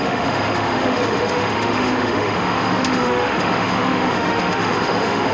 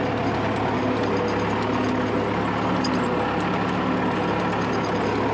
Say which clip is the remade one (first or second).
first